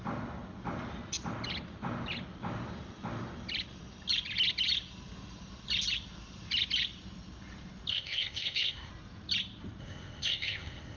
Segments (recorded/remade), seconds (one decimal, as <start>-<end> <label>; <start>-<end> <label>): 0.0-7.9 recorded; 7.9-8.9 remade; 8.9-9.8 recorded; 9.8-11.0 remade